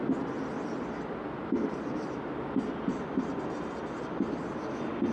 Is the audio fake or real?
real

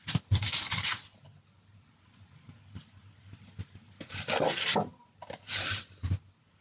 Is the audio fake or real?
real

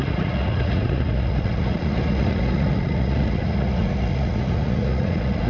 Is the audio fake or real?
fake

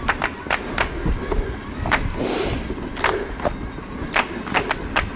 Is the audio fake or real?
real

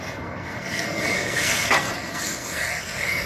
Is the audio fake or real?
fake